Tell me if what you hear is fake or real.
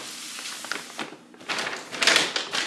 real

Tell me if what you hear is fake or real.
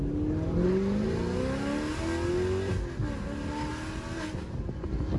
real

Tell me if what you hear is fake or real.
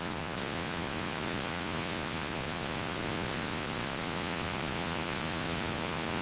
fake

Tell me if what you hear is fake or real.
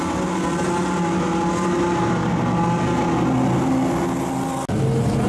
real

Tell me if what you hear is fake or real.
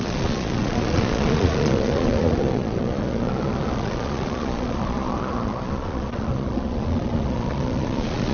fake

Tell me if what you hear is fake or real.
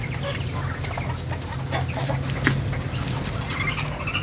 real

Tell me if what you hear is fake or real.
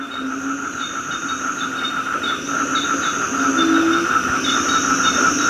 real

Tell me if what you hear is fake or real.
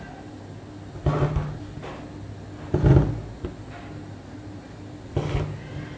real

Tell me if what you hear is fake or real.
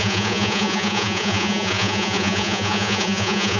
fake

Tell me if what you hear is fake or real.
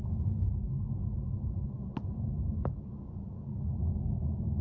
real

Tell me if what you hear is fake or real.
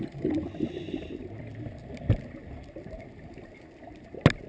real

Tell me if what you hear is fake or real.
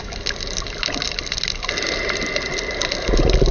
real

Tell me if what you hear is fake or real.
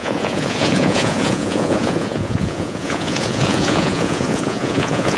fake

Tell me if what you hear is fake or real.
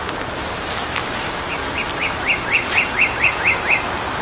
real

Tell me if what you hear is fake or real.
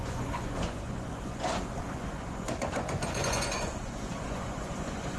fake